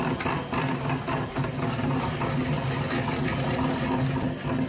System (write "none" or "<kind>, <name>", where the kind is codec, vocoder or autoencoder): none